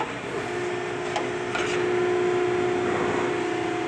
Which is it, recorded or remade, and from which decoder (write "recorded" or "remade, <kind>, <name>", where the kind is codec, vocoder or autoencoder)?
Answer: recorded